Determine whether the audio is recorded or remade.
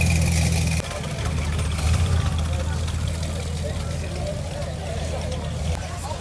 recorded